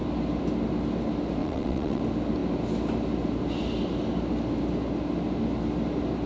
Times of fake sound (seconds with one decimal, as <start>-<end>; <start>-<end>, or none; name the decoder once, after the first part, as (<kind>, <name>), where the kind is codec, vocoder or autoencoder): 1.4-2.0 (vocoder, WaveNeXt)